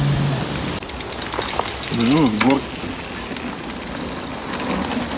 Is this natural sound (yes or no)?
yes